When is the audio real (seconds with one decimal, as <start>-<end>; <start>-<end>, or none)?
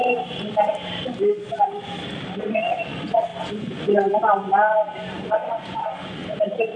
0.0-2.4; 3.3-5.1; 6.2-6.8